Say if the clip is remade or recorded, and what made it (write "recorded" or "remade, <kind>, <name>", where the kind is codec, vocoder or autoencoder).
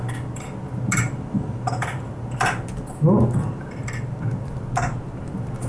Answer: recorded